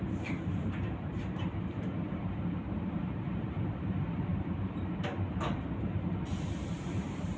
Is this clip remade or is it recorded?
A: remade